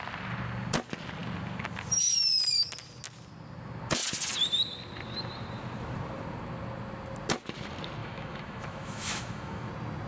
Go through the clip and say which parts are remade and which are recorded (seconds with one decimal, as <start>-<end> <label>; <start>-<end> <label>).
0.0-8.0 recorded; 8.0-9.7 remade; 9.7-10.1 recorded